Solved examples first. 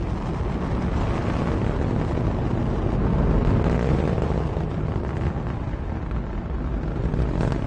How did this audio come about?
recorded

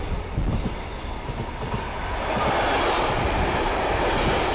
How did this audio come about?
recorded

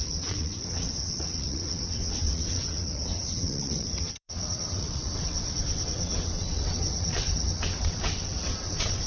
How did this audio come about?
remade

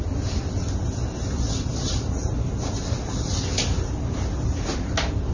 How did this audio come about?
recorded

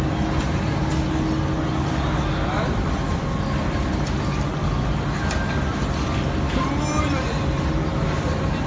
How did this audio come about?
recorded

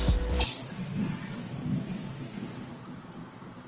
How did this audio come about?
recorded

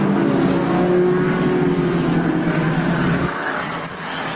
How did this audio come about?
recorded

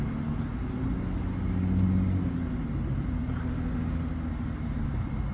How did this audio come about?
recorded